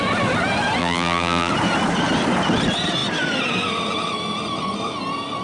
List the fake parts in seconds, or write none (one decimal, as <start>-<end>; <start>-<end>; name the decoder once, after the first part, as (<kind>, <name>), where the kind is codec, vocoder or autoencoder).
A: 0.8-1.5 (vocoder, BigVGAN v2)

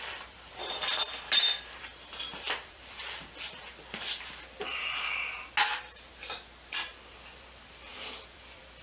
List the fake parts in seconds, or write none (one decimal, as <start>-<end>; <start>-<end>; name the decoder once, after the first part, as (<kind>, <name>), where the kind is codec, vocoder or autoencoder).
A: 0.0-0.8 (vocoder, BigVGAN v2); 1.4-3.7; 7.1-8.8